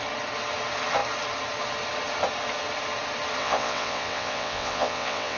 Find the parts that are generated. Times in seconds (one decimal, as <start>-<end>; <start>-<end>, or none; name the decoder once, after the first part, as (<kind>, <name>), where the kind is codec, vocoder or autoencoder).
3.4-5.4 (vocoder, WaveNeXt)